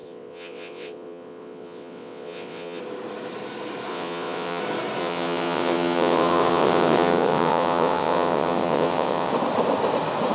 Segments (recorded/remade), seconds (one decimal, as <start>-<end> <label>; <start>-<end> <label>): 0.0-2.8 remade; 2.8-3.9 recorded; 3.9-4.6 remade; 4.6-5.0 recorded; 5.0-9.3 remade; 9.3-10.3 recorded

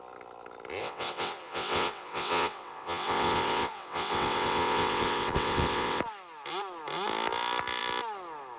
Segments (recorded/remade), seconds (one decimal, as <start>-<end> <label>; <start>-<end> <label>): 0.0-0.8 recorded; 0.8-6.0 remade; 6.0-8.6 recorded